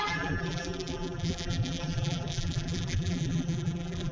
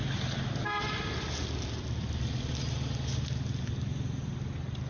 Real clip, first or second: second